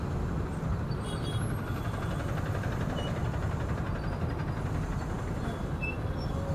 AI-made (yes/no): no